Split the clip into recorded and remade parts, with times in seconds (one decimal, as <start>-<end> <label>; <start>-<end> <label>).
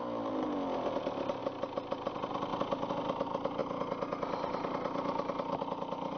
0.0-6.2 recorded